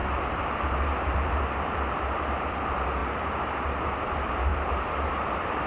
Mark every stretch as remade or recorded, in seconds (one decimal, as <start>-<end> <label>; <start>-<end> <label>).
0.0-5.7 recorded